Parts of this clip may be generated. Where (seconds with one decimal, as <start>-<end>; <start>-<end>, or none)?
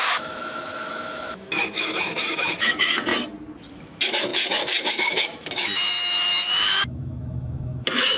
0.0-3.1; 3.7-8.2